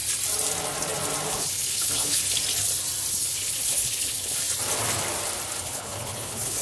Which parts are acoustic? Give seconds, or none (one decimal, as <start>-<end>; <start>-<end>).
0.0-1.3; 2.2-3.1; 4.4-5.6